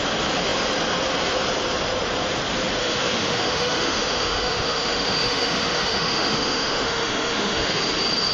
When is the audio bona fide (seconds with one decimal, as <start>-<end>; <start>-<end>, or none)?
0.0-2.8; 7.8-8.3